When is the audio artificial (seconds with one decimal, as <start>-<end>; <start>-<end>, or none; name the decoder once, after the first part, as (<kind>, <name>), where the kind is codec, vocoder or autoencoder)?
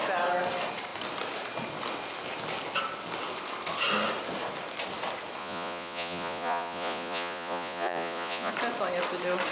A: 5.4-8.5 (vocoder, Vocos)